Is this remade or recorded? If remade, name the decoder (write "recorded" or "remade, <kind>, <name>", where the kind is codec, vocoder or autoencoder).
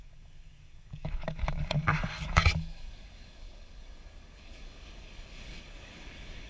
remade, codec, DAC